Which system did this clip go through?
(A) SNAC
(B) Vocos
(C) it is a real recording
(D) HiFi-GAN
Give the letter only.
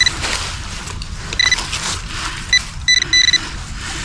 C